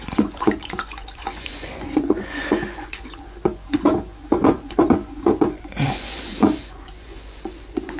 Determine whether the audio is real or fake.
fake